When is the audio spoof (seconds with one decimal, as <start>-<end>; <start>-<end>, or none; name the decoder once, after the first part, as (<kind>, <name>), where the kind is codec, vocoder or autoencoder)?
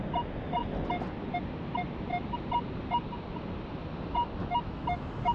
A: 4.4-5.3 (autoencoder, DAC-VAE)